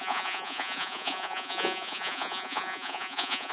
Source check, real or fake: fake